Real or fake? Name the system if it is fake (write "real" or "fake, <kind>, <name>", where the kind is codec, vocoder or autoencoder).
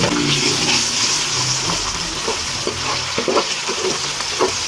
real